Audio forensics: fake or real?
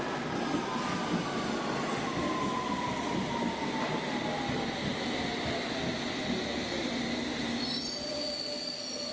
real